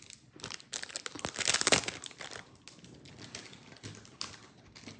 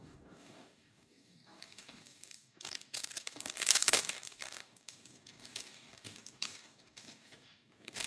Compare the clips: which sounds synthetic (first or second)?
second